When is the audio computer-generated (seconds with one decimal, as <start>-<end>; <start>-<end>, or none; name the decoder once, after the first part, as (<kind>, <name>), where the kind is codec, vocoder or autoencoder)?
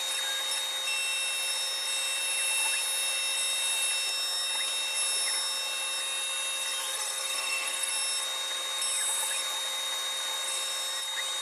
6.8-7.9 (codec, SNAC)